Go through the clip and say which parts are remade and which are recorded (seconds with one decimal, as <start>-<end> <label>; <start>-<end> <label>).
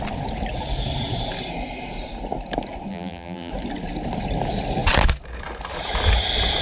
0.0-2.9 recorded; 2.9-3.5 remade; 3.5-6.6 recorded